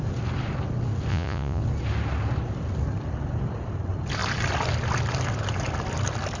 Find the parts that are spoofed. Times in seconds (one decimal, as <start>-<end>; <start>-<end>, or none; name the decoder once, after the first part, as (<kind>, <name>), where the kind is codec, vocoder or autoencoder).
1.1-1.6 (vocoder, Vocos)